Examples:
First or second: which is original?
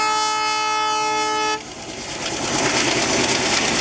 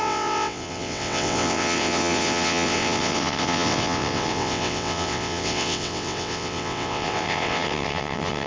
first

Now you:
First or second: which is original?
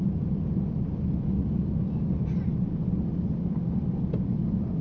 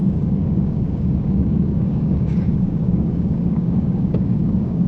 first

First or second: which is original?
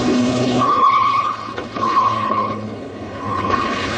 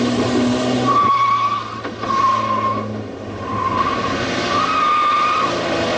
second